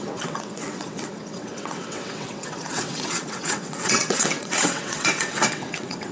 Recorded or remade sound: remade